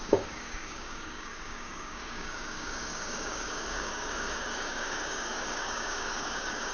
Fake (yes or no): yes